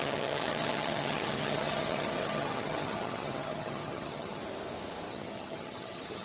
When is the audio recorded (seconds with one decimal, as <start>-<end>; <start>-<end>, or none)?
4.4-5.1